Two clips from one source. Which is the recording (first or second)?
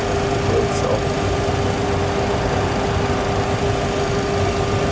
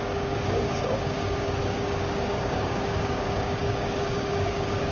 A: first